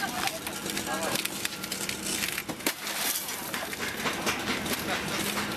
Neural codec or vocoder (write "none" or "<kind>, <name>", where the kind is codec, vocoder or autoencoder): none